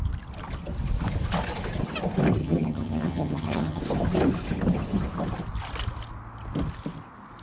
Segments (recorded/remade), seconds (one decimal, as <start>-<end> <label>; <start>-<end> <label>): 0.0-2.4 recorded; 2.4-3.8 remade; 3.8-7.4 recorded